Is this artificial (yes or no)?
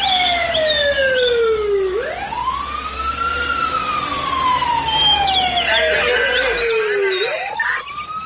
no